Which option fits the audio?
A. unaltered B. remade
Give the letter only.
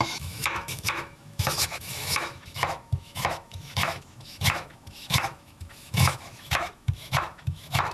B